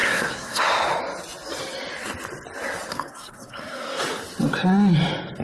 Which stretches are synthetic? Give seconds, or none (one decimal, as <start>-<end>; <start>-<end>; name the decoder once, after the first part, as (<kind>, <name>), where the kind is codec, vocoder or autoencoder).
0.0-0.6 (codec, SNAC); 2.9-4.0